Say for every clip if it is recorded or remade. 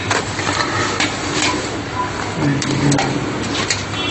recorded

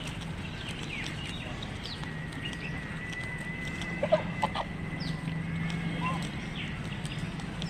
recorded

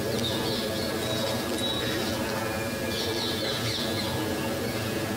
recorded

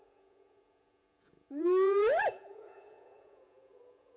remade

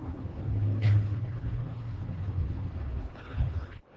remade